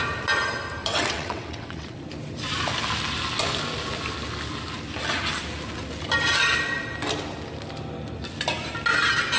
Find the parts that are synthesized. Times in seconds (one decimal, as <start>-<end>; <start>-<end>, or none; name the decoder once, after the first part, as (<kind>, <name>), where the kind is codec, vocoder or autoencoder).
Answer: 0.8-2.0 (vocoder, WaveNeXt)

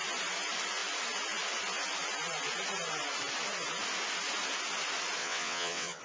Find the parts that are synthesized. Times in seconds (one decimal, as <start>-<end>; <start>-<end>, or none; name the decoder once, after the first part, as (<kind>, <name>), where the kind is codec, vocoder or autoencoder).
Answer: 5.2-6.0 (vocoder, WaveNeXt)

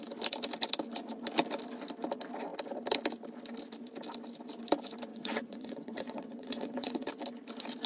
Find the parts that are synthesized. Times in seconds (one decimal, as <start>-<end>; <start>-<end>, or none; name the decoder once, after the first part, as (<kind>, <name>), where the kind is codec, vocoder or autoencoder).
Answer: 5.1-7.1 (vocoder, WaveNeXt)